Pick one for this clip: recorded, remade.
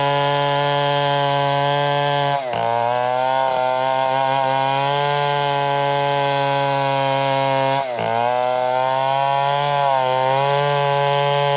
recorded